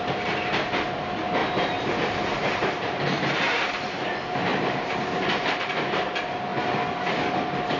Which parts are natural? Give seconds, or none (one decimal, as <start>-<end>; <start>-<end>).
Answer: 0.0-1.4; 3.7-4.5; 6.1-7.8